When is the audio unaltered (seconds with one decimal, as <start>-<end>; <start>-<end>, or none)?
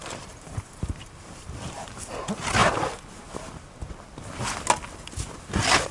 2.1-5.9